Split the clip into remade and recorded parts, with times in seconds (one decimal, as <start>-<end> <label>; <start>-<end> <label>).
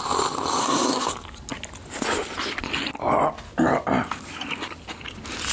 0.0-0.6 recorded; 0.6-1.1 remade; 1.1-5.5 recorded